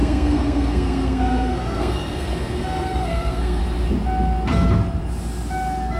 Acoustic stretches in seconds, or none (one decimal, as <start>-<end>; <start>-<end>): 3.6-6.0